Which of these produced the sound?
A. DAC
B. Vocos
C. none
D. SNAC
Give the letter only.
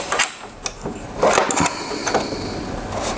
C